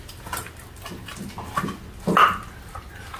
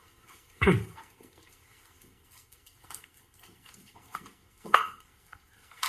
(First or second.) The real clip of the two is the first